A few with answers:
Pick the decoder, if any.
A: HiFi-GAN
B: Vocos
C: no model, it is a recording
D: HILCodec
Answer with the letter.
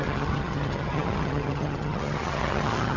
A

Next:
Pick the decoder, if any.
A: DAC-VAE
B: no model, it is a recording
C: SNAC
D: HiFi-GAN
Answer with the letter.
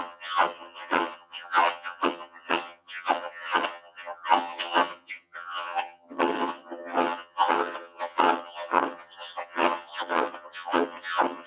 D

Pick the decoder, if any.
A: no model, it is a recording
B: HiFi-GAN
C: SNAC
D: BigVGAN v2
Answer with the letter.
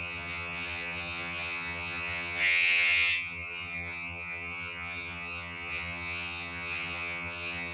B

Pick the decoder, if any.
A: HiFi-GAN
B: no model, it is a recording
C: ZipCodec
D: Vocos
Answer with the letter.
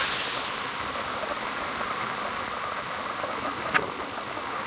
B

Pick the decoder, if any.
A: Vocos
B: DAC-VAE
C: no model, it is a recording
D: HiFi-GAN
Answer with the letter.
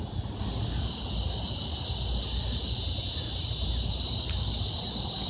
C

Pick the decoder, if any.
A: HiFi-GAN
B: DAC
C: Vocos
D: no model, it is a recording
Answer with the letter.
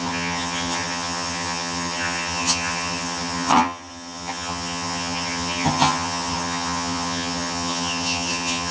A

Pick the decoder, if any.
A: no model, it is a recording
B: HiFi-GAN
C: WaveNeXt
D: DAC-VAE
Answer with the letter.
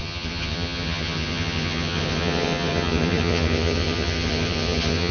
B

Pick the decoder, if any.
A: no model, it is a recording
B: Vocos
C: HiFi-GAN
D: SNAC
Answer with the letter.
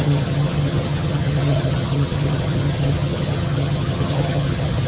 C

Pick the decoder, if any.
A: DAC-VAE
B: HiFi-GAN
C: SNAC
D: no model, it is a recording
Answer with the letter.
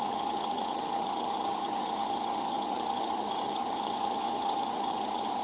B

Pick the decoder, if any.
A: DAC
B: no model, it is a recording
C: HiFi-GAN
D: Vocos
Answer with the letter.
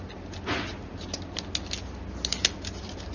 B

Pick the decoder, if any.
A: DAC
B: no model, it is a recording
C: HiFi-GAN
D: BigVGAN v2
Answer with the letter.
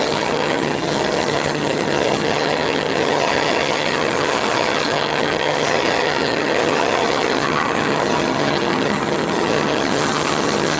C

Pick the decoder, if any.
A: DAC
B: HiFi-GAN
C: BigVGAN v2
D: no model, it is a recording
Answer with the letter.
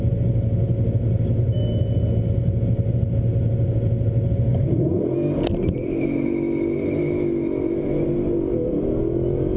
D